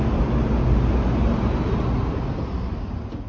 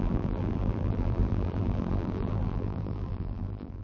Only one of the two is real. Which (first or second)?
first